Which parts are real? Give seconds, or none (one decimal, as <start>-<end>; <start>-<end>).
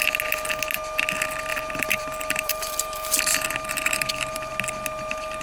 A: 0.0-1.5; 4.5-5.4